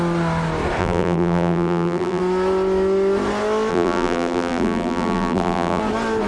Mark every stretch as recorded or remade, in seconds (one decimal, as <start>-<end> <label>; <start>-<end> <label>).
0.0-0.8 recorded; 0.8-2.2 remade; 2.2-3.7 recorded; 3.7-5.8 remade; 5.8-6.3 recorded